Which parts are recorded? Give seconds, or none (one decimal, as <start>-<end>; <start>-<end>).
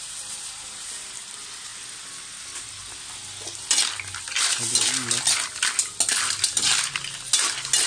0.0-7.9